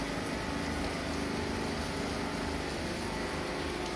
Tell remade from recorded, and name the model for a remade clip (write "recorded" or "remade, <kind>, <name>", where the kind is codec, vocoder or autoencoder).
recorded